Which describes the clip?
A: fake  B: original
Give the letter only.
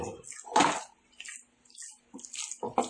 B